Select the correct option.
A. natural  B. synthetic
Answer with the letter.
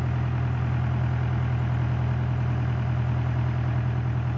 A